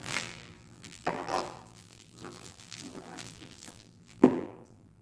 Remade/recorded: remade